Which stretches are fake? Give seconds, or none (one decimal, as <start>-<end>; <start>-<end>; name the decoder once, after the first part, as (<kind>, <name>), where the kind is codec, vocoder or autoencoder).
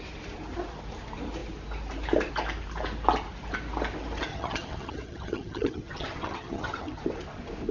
4.3-7.0 (vocoder, HiFi-GAN)